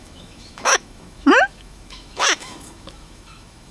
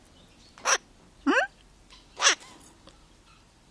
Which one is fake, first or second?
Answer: first